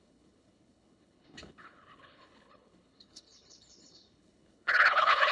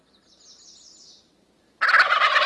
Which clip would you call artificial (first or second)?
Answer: first